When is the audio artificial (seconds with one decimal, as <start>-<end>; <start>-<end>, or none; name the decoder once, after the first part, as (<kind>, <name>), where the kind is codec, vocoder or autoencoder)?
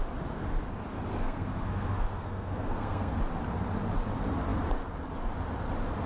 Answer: 1.1-3.2 (codec, SNAC)